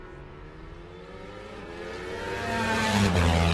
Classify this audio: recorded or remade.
recorded